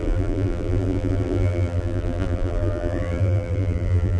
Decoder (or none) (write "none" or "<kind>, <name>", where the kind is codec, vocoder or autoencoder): vocoder, BigVGAN v2